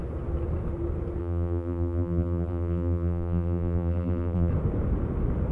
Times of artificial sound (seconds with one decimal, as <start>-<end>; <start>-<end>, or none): 1.2-4.5